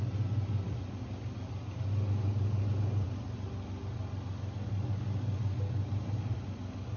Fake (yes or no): no